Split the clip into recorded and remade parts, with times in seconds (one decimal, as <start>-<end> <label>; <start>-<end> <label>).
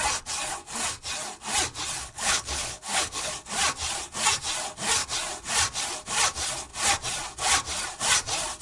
0.0-2.0 recorded; 2.0-3.3 remade; 3.3-8.6 recorded